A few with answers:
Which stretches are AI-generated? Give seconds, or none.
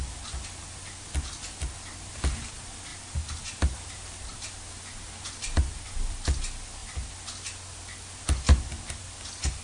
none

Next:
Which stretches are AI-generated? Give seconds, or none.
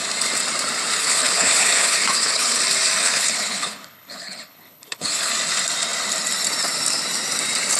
1.0-2.6 (codec, HILCodec); 3.0-5.3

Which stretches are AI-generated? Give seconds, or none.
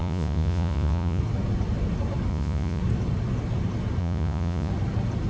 0.0-1.2 (vocoder, Vocos); 2.3-2.8; 4.0-4.7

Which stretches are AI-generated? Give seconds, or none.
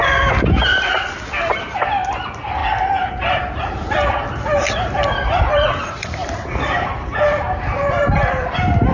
none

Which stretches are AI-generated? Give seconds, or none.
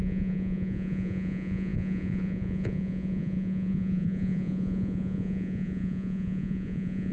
0.0-7.1 (vocoder, Vocos)